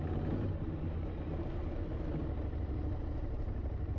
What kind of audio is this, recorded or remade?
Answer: recorded